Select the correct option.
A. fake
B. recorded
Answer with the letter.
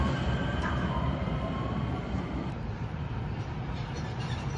A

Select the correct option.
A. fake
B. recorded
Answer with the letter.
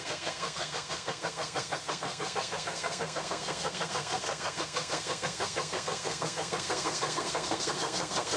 A